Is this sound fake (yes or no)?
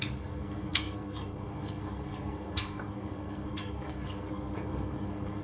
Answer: yes